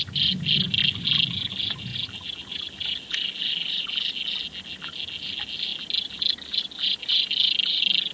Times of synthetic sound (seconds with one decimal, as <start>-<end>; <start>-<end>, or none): none